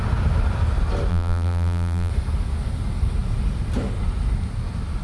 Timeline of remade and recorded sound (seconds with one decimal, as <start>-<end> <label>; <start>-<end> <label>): 0.0-1.1 recorded; 1.1-2.1 remade; 2.1-5.0 recorded